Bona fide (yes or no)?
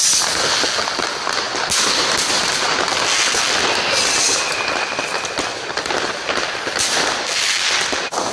yes